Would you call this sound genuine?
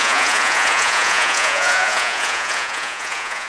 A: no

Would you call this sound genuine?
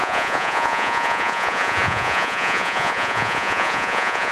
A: no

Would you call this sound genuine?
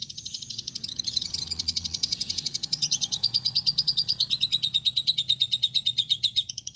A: no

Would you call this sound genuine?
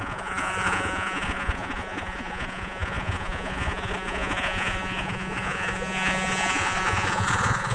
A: no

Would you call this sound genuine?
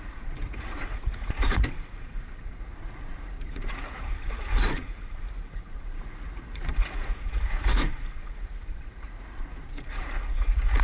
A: no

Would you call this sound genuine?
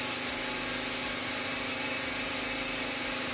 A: yes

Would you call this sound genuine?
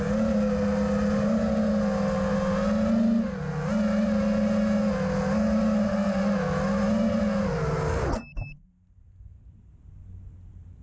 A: yes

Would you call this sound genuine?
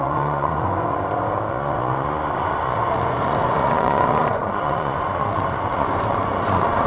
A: no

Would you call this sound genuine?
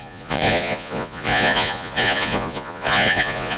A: no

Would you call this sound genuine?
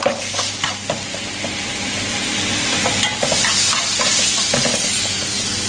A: yes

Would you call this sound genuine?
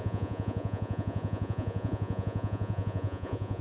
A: no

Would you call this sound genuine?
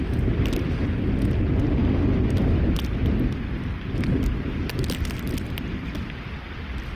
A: yes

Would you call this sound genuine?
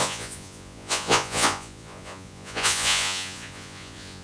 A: no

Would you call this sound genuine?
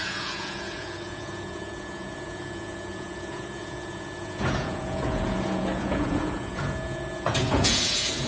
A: no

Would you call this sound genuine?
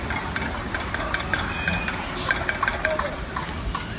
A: yes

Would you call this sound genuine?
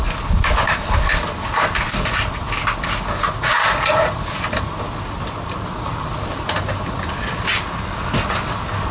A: yes